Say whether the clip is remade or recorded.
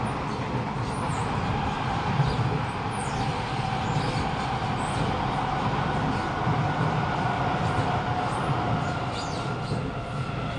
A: recorded